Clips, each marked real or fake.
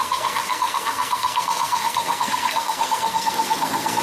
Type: fake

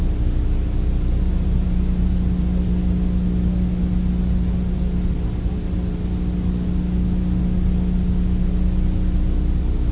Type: real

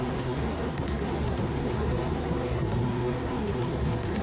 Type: fake